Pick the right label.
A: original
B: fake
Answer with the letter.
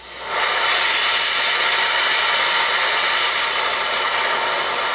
A